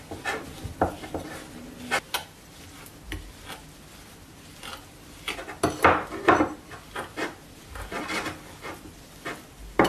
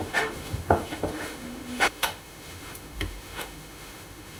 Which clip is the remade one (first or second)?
second